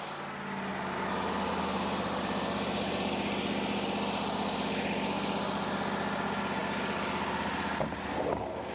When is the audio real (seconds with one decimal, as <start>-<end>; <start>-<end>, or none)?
0.0-8.7